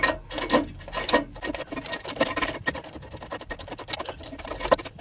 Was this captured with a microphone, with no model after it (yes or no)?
yes